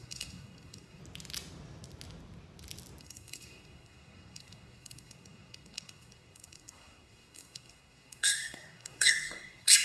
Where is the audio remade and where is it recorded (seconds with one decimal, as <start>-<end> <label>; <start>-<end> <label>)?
0.0-1.0 remade; 1.0-3.0 recorded; 3.0-9.8 remade